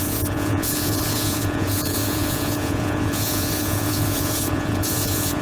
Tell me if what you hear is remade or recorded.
remade